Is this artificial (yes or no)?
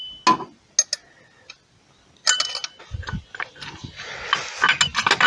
no